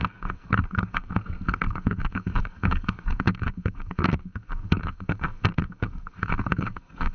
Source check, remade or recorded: remade